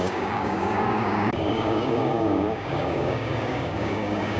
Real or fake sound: fake